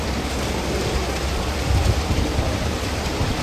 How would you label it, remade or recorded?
recorded